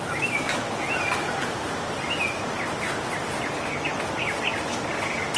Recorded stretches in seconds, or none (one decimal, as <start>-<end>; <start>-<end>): 0.0-5.4